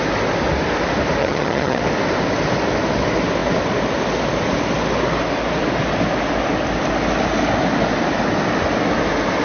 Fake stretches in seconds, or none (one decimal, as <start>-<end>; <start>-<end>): 1.2-1.8

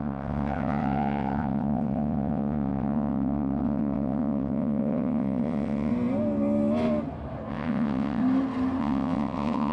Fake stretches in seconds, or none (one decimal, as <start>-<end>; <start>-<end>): 0.0-5.9; 7.5-8.2; 8.8-9.7

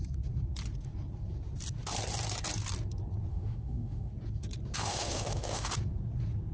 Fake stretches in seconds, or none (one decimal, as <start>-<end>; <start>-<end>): 3.3-4.1; 4.8-5.7

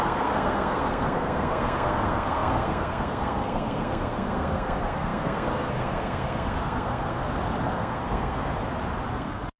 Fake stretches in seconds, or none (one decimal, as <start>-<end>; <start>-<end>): 0.0-7.2; 7.8-8.5; 9.1-9.6

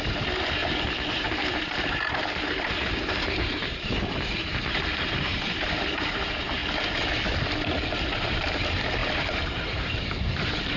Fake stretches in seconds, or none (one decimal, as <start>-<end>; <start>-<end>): 0.0-0.6; 1.1-6.6; 7.9-10.8